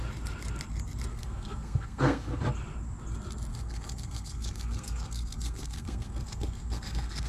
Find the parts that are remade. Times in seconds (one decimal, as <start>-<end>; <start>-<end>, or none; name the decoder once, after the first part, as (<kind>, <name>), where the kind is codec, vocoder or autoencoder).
1.1-2.4 (codec, SNAC); 3.5-7.3